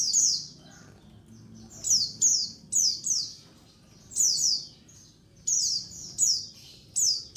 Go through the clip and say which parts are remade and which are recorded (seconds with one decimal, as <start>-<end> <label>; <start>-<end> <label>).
0.0-7.4 recorded